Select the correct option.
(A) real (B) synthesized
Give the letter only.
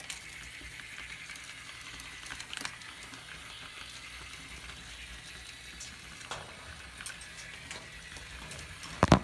A